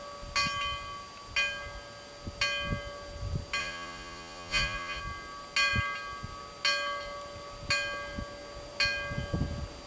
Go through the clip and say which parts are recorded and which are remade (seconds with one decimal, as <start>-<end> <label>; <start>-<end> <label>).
0.0-3.6 recorded; 3.6-5.0 remade; 5.0-9.9 recorded

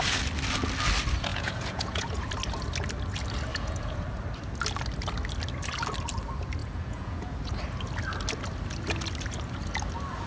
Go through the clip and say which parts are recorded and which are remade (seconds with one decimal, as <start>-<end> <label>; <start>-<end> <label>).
0.0-1.3 recorded; 1.3-2.3 remade; 2.3-3.5 recorded; 3.5-4.0 remade; 4.0-6.6 recorded; 6.6-7.4 remade; 7.4-10.3 recorded

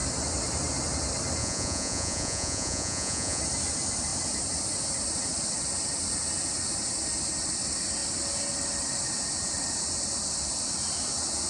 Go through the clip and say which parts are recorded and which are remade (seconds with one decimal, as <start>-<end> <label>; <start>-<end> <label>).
0.0-1.4 recorded; 1.4-3.4 remade; 3.4-11.5 recorded

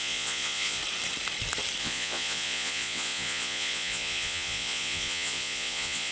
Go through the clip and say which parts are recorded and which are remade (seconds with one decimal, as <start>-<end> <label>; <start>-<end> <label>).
0.0-0.8 remade; 0.8-1.8 recorded; 1.8-6.1 remade